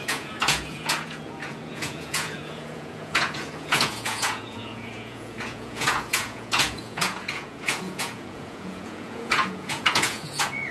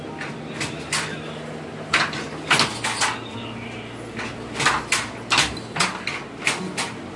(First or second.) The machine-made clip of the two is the first